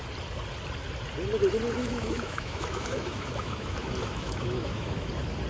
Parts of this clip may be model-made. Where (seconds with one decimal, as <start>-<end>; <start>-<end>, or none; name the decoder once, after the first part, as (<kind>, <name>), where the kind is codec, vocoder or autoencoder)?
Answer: 1.8-5.1 (autoencoder, DAC-VAE)